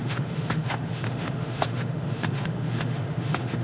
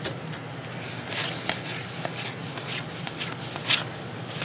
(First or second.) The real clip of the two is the second